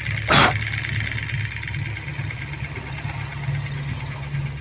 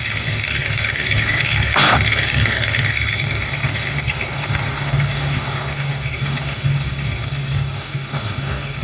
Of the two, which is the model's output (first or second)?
second